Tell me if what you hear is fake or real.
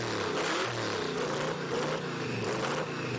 real